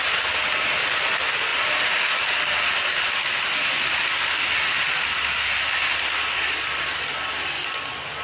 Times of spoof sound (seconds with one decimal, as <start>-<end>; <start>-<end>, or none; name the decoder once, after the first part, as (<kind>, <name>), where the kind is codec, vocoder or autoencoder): none